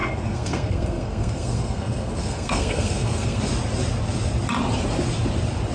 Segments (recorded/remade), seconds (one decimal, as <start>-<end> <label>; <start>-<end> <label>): 0.0-3.4 remade; 3.4-5.7 recorded